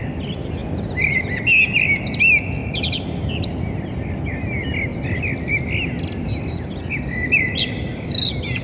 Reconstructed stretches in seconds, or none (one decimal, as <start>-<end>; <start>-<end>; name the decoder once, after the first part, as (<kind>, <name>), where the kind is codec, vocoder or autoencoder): none